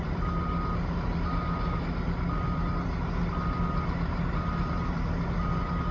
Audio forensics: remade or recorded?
recorded